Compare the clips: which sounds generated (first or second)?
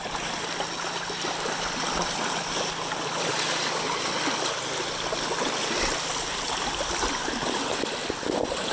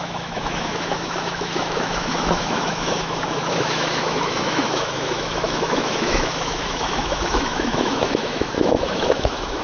second